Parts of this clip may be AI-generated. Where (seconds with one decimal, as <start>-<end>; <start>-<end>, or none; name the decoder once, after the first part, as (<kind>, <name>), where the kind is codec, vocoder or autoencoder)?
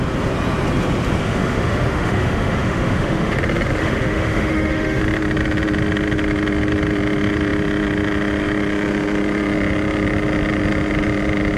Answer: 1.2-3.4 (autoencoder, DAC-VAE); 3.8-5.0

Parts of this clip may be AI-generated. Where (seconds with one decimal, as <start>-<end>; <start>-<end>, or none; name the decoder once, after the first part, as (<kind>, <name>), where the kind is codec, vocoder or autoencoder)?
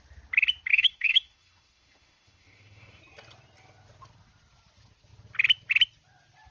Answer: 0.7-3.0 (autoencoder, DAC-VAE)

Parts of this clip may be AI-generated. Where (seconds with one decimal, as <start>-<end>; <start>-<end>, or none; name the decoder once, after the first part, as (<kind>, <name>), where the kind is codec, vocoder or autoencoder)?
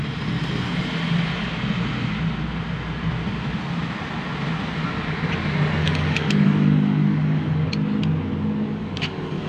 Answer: 5.8-7.7 (codec, DAC); 8.8-9.5